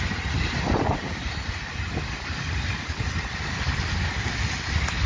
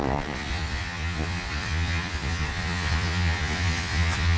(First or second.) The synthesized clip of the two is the second